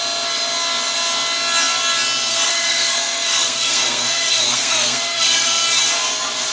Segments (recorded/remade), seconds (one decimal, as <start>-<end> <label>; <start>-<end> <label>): 0.0-2.3 recorded; 2.3-5.6 remade; 5.6-6.5 recorded